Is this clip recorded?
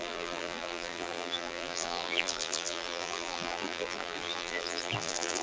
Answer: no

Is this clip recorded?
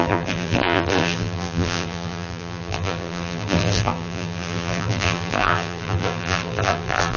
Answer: no